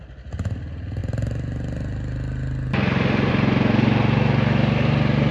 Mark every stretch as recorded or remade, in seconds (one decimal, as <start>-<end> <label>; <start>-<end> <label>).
0.0-5.3 recorded